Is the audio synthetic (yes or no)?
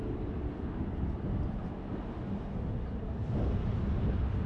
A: no